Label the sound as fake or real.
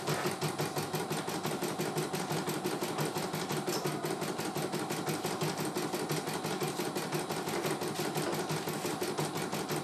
real